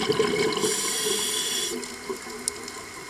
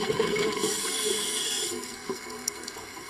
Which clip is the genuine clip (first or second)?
first